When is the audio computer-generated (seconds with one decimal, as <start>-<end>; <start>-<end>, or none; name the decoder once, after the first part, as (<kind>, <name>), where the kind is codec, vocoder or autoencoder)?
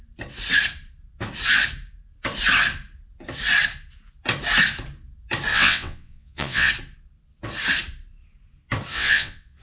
5.5-6.7 (vocoder, WaveNeXt); 8.9-9.6